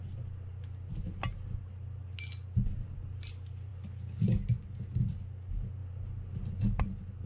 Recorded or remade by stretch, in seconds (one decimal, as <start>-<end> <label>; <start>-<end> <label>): 0.0-7.3 recorded